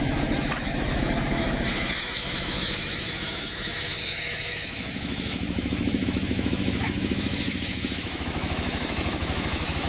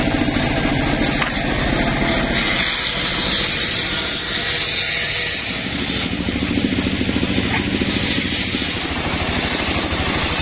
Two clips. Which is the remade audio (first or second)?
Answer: first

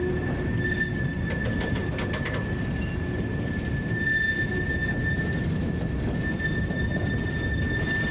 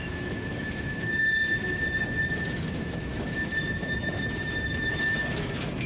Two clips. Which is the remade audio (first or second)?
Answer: second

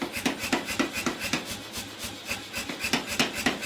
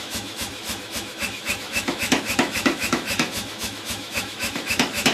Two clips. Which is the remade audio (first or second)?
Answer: second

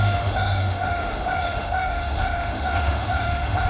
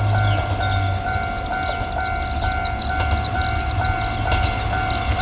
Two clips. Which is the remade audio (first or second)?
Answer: first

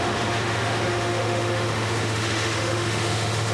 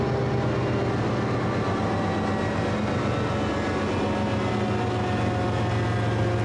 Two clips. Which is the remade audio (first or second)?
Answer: first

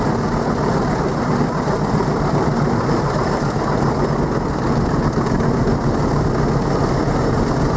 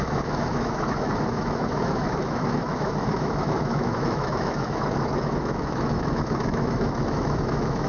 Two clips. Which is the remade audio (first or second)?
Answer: second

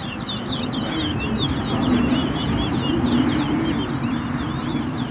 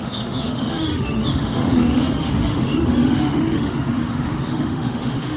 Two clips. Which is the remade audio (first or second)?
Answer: second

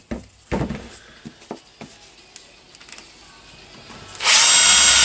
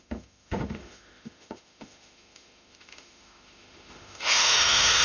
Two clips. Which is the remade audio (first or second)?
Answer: second